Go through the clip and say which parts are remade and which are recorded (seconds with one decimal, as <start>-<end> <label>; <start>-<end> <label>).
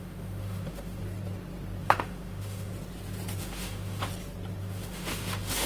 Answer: 0.0-1.0 remade; 1.0-1.8 recorded; 1.8-2.7 remade; 2.7-3.4 recorded; 3.4-4.0 remade; 4.0-4.6 recorded; 4.6-5.7 remade